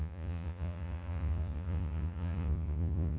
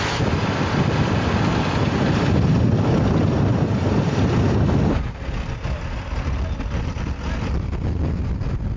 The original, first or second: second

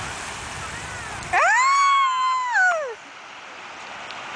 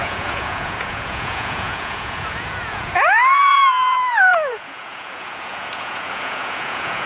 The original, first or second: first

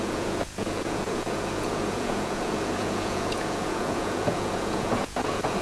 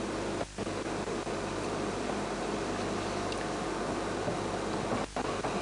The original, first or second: second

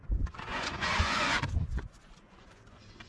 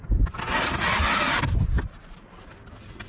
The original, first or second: second